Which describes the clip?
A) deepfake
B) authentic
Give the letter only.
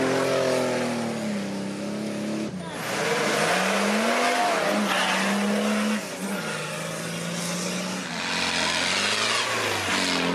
B